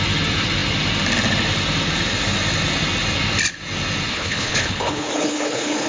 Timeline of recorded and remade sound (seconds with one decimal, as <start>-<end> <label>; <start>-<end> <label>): 0.0-4.1 recorded; 4.1-5.9 remade